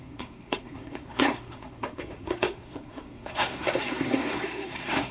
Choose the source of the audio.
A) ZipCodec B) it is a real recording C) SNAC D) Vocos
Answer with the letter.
C